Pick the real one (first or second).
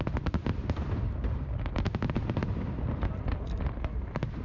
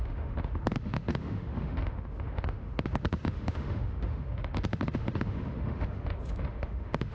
first